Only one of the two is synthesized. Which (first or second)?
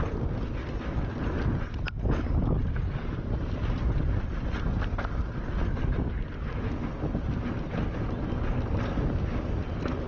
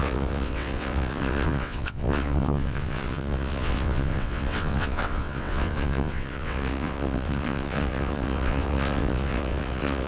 second